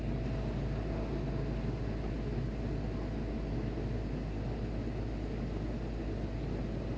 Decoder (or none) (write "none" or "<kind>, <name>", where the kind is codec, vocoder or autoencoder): none